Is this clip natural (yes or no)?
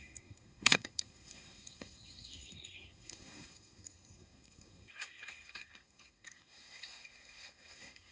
no